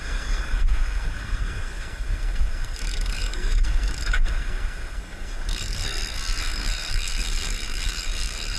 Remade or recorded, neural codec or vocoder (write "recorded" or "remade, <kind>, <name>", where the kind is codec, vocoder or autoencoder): remade, codec, SNAC